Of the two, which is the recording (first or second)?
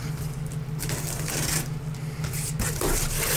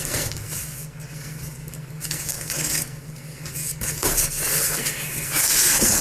first